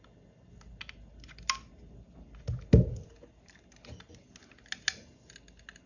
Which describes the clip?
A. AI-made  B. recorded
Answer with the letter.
B